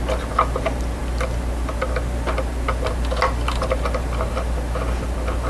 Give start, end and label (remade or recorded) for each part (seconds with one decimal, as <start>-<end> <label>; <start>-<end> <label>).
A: 0.0-5.5 recorded